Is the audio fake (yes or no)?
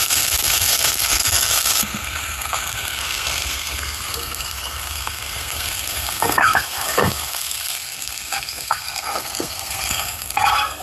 yes